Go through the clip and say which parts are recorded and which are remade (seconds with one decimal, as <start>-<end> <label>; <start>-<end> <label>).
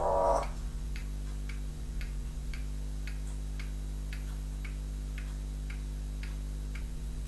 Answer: 0.0-1.0 remade; 1.0-1.7 recorded; 1.7-2.6 remade; 2.6-6.8 recorded; 6.8-7.3 remade